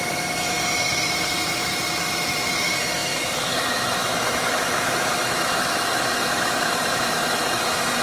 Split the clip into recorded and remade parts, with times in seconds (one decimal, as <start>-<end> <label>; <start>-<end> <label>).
0.0-8.0 remade